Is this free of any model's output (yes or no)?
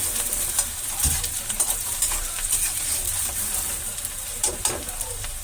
no